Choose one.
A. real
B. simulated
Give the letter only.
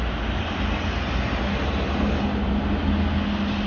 A